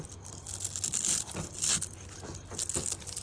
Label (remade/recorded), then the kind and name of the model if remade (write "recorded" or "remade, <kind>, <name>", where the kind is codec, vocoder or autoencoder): recorded